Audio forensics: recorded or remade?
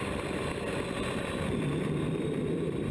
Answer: remade